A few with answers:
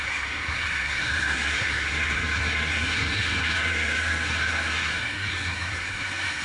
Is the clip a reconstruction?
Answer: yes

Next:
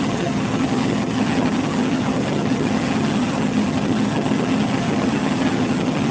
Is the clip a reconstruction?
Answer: yes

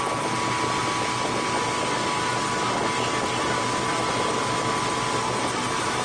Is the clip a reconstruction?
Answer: no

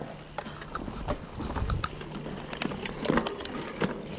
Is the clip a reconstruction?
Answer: no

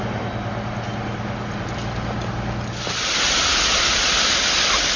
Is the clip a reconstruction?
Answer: no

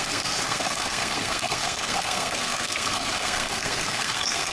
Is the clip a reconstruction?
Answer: yes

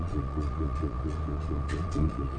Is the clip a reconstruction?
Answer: yes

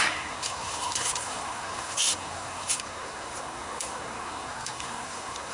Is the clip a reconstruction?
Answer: yes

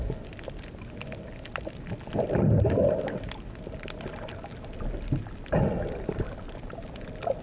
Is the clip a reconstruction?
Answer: no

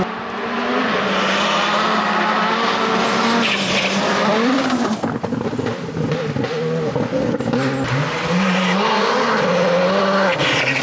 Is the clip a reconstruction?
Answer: no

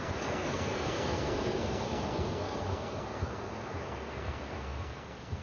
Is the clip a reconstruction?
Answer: yes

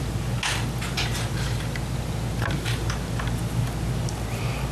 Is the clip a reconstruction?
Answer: no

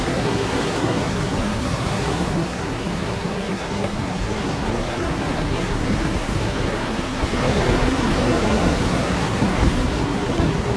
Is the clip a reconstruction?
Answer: yes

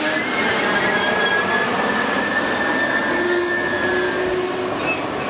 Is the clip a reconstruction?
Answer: no